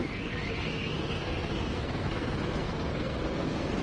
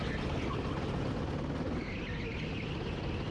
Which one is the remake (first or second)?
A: first